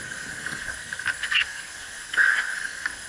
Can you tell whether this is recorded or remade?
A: remade